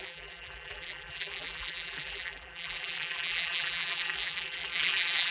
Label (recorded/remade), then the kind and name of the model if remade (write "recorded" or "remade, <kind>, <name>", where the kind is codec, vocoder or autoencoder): remade, vocoder, BigVGAN v2